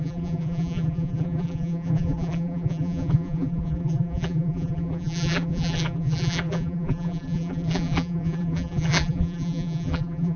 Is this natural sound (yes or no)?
no